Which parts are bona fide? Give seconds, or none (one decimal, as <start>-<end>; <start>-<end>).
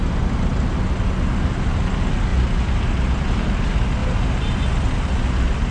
0.0-4.0; 4.6-5.7